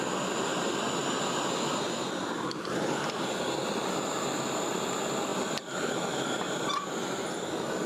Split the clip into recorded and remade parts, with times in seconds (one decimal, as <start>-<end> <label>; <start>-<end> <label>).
0.0-1.0 recorded; 1.0-4.7 remade; 4.7-5.3 recorded; 5.3-5.9 remade; 5.9-7.9 recorded